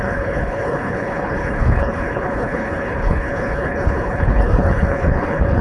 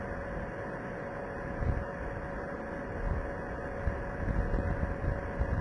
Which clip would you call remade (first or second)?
first